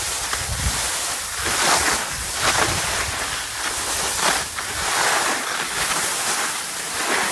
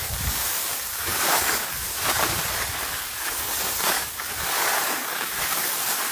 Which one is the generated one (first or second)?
second